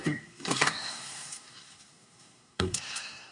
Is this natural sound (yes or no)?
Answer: no